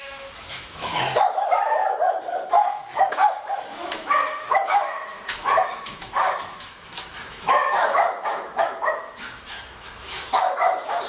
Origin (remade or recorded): remade